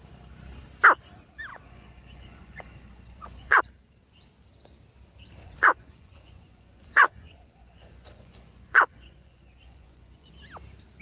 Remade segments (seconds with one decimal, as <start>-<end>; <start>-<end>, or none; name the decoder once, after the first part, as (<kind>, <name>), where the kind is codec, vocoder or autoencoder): 1.5-3.6 (vocoder, Vocos); 5.4-10.3